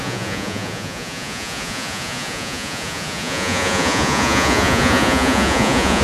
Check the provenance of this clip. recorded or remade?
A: remade